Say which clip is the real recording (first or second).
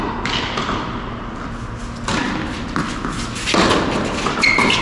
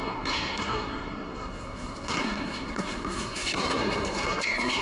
first